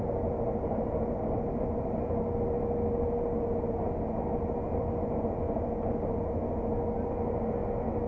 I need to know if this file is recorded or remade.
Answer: recorded